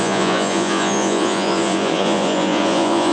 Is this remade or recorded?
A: remade